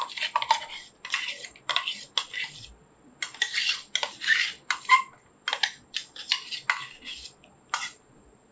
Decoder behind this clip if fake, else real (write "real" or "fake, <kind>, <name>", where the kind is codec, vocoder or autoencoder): real